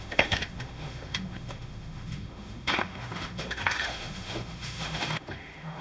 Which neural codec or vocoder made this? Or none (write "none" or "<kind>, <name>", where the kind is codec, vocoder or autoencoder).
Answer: autoencoder, DAC-VAE